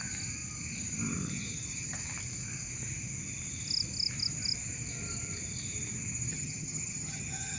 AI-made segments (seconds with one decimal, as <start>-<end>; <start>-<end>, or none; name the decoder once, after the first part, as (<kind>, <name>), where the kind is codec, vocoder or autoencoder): 6.3-7.6 (vocoder, HiFi-GAN)